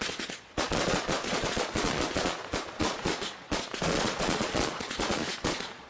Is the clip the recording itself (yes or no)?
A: no